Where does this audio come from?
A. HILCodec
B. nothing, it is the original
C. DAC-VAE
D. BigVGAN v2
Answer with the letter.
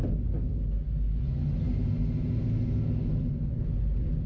B